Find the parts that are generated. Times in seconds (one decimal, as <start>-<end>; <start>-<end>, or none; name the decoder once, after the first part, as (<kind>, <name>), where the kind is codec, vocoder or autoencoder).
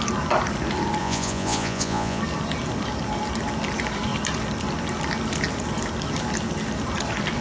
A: 1.0-2.2 (vocoder, Vocos)